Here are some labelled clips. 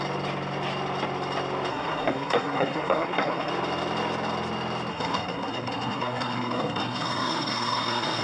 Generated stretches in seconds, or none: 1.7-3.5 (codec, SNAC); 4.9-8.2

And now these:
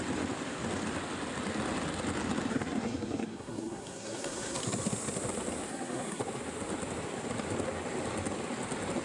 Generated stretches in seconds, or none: 2.5-4.6 (codec, SNAC); 5.7-6.2

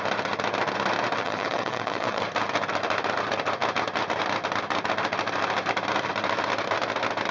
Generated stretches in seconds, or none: 1.2-2.2 (vocoder, WaveNeXt)

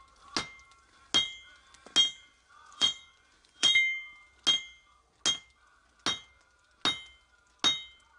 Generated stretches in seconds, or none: 2.2-3.7 (vocoder, Vocos)

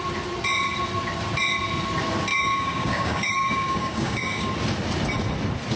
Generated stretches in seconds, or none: 2.3-4.5 (codec, DAC)

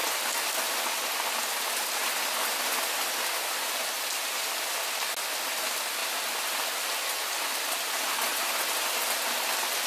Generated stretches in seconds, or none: none

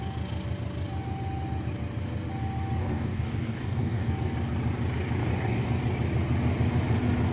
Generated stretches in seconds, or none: 2.8-4.1 (codec, DAC); 5.2-5.7